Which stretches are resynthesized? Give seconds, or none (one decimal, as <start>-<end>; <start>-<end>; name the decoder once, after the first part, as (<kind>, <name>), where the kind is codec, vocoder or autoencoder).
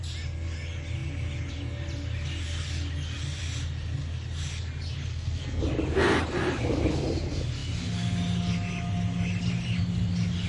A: 5.1-5.6 (codec, SNAC)